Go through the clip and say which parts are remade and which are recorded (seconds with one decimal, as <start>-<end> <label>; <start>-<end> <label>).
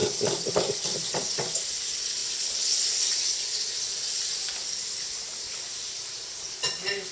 0.0-7.1 recorded